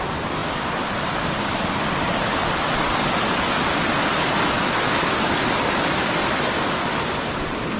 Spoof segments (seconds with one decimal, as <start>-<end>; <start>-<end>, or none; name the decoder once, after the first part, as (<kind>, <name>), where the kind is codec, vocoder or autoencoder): none